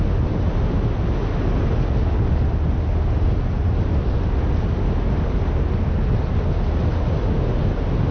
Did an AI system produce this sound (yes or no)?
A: no